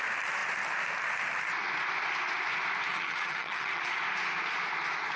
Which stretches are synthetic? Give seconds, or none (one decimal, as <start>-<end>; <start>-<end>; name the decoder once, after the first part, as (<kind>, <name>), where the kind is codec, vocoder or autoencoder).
2.9-3.8 (vocoder, HiFi-GAN)

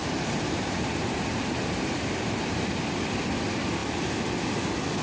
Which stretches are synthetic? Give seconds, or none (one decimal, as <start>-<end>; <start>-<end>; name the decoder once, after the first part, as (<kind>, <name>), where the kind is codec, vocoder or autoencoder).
0.0-3.0 (vocoder, BigVGAN v2)